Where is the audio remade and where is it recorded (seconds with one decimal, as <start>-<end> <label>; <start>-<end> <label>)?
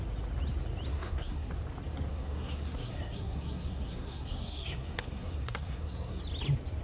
0.0-0.9 recorded; 0.9-1.5 remade; 1.5-2.1 recorded; 2.1-6.2 remade; 6.2-6.8 recorded